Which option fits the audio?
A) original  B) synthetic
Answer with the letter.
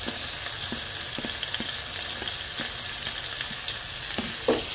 A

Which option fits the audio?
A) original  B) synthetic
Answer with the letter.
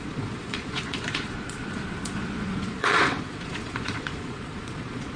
B